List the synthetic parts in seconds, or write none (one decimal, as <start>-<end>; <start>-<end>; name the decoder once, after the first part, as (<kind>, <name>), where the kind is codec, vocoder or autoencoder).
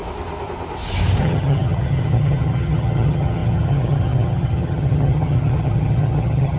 1.2-6.6 (vocoder, HiFi-GAN)